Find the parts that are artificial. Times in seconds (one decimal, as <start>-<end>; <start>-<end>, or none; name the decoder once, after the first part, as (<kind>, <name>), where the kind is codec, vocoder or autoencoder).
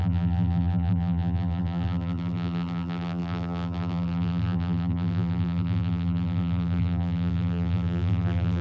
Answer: 0.0-8.6 (vocoder, BigVGAN v2)